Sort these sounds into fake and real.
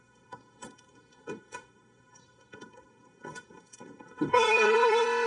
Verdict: fake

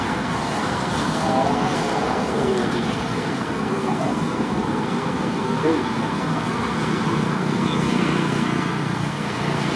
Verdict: fake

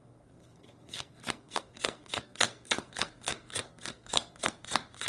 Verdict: fake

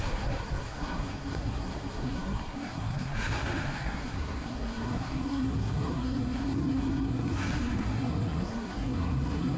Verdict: fake